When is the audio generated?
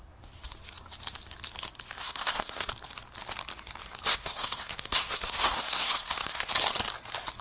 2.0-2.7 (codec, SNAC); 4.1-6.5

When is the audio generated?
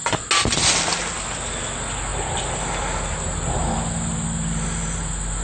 none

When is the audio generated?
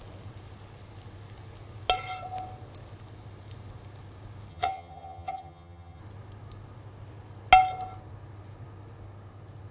4.5-6.0 (vocoder, HiFi-GAN)